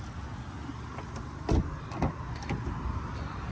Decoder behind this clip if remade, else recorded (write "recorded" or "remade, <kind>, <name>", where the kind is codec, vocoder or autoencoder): recorded